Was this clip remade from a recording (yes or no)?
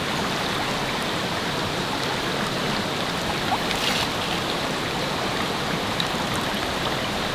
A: no